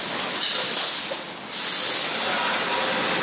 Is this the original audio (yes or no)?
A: yes